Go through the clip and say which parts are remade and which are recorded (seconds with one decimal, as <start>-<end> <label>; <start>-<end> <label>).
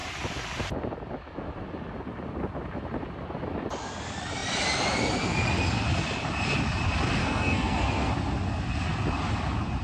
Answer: 0.0-7.2 recorded; 7.2-8.1 remade; 8.1-9.8 recorded